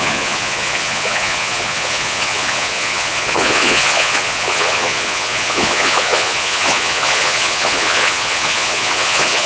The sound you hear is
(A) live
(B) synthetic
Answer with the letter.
B